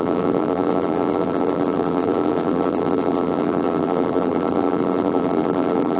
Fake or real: fake